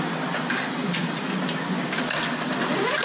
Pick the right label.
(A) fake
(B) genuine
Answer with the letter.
B